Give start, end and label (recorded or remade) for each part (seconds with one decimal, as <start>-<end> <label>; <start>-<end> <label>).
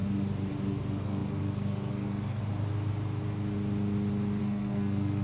0.0-0.7 recorded; 0.7-2.4 remade; 2.4-4.4 recorded; 4.4-5.2 remade